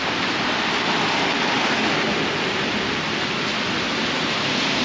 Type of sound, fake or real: real